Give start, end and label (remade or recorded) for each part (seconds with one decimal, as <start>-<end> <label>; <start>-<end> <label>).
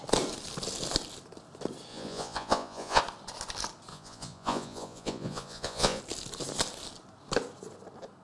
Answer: 0.0-1.9 recorded; 1.9-3.0 remade; 3.0-3.9 recorded; 3.9-6.0 remade; 6.0-8.2 recorded